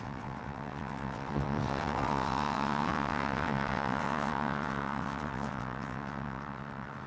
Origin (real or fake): fake